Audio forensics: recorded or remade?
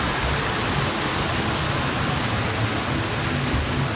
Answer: recorded